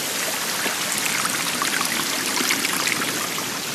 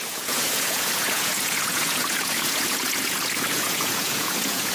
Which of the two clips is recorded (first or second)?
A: first